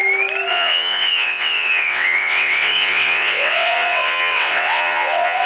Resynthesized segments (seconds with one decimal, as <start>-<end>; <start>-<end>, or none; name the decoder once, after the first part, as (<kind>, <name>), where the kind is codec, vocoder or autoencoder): 0.5-5.5 (vocoder, WaveNeXt)